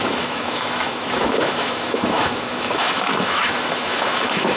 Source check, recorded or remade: remade